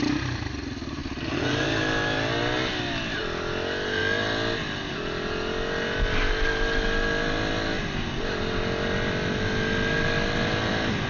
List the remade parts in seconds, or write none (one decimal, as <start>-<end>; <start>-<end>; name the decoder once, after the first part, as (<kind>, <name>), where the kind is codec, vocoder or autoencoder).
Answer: none